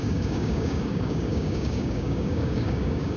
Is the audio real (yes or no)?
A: no